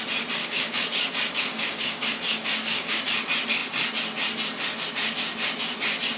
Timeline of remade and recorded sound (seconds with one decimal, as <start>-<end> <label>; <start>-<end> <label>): 0.0-0.4 recorded; 0.4-3.0 remade; 3.0-6.2 recorded